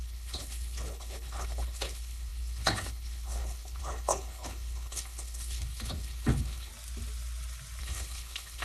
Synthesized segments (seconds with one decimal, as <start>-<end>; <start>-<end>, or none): 0.0-6.7; 7.8-8.6

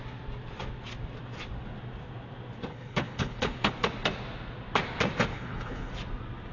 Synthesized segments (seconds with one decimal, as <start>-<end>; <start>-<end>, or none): 2.7-3.7; 5.3-5.9

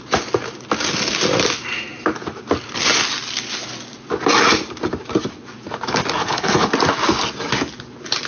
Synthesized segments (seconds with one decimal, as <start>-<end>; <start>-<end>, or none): 6.2-6.7

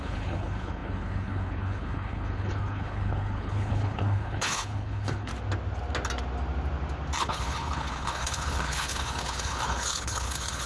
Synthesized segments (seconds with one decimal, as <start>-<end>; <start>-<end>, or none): 0.0-5.3; 7.2-10.7